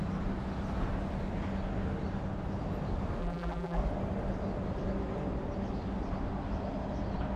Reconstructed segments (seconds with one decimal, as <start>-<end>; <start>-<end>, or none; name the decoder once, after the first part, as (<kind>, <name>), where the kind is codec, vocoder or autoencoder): 3.2-3.8 (vocoder, BigVGAN v2)